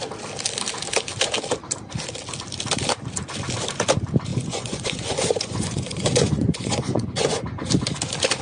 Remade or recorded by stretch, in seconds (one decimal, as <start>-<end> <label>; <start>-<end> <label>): 0.0-4.3 recorded; 4.3-7.7 remade; 7.7-8.4 recorded